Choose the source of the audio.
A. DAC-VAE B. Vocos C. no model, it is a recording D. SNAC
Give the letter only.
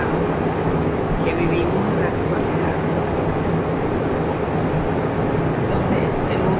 C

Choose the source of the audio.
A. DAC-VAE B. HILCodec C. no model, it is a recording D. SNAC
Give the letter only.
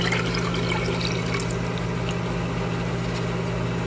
C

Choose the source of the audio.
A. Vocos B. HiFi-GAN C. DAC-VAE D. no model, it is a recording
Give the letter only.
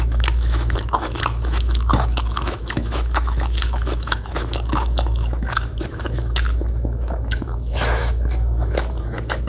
C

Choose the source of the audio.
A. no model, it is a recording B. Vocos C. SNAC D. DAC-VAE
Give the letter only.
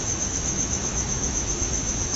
D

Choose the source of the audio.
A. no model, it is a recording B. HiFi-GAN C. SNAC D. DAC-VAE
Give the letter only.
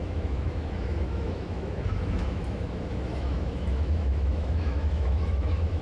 D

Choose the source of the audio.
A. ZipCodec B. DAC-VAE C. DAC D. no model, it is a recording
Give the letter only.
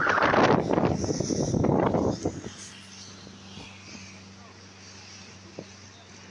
D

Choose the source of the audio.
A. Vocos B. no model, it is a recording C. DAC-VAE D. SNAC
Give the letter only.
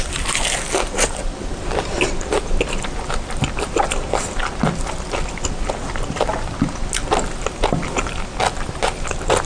B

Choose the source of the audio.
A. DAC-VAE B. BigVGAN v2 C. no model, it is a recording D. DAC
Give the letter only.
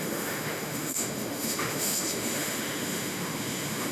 A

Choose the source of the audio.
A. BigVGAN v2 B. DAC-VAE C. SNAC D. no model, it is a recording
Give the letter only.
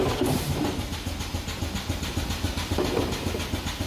D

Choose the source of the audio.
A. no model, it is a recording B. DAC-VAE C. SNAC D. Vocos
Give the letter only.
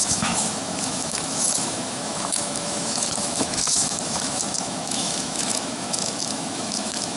B